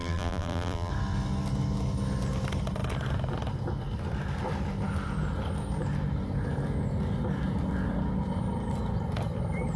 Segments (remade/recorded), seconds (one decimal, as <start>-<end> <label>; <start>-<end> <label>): 0.0-0.9 remade; 0.9-9.8 recorded